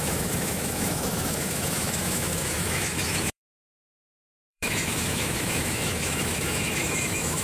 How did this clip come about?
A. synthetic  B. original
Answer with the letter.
A